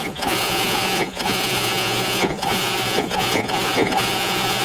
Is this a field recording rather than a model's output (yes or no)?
no